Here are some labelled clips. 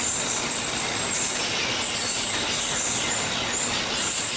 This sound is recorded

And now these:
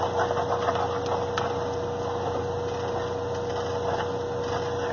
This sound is recorded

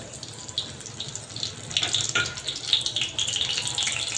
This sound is recorded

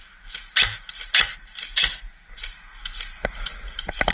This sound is recorded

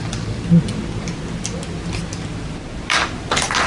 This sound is recorded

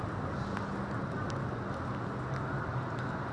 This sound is recorded